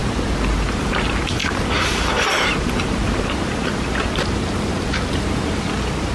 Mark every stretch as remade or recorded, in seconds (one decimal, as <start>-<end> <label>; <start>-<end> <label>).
0.0-6.1 recorded